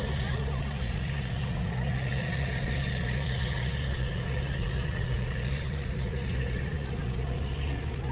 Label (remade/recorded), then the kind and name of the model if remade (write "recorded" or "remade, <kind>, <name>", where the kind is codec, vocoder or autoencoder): remade, vocoder, Vocos